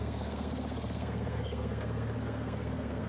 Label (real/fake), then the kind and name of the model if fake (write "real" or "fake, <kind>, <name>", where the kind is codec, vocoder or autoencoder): fake, codec, SNAC